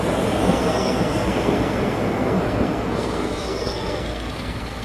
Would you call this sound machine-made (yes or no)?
yes